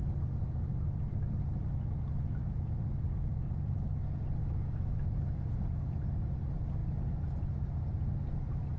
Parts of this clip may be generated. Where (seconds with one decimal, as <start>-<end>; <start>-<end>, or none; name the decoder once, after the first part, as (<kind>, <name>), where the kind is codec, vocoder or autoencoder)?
1.1-1.8 (autoencoder, DAC-VAE); 2.4-4.0; 4.4-5.5